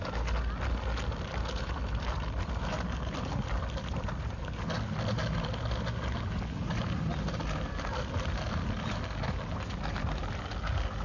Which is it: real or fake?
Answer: real